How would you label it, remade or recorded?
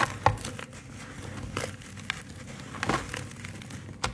recorded